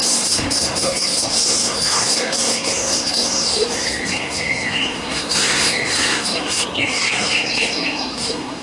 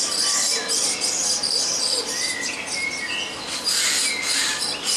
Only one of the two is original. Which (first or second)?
second